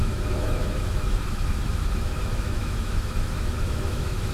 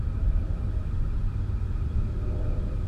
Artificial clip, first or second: first